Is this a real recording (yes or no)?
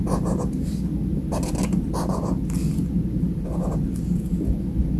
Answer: yes